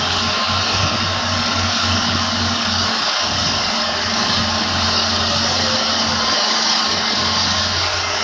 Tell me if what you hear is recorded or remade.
remade